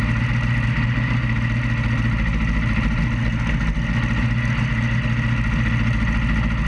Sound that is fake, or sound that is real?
real